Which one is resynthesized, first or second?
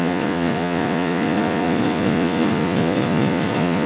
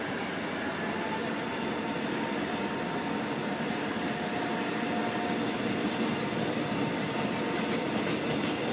first